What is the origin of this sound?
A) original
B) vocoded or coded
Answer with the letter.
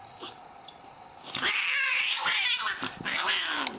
A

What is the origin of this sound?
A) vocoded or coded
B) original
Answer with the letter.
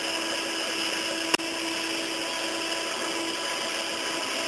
B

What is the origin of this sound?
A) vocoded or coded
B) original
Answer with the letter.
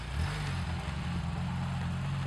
B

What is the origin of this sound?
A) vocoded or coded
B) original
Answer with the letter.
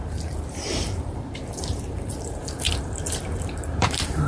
A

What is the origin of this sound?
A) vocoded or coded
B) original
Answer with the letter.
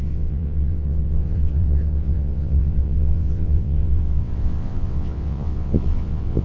A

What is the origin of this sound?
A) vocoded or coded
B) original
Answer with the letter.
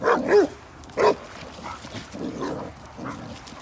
B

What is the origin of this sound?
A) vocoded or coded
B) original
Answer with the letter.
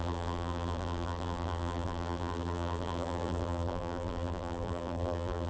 A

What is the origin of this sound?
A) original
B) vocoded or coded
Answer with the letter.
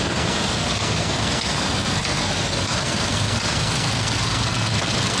B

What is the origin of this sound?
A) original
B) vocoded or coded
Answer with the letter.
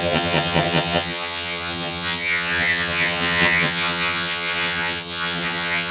B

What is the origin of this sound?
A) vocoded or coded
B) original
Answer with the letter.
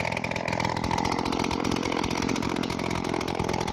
B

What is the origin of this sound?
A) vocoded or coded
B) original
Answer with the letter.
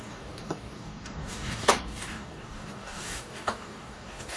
A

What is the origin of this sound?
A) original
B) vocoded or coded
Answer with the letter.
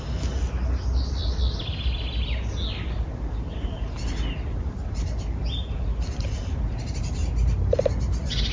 A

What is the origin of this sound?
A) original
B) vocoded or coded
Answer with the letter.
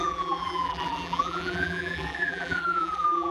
B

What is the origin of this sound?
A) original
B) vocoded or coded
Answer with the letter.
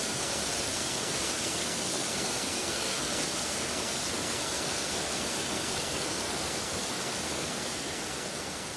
B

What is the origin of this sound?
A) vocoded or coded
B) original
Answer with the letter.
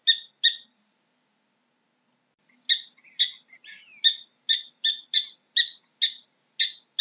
B